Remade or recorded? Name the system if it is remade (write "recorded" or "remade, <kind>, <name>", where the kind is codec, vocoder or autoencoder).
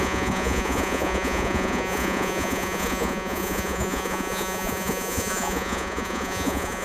remade, vocoder, Vocos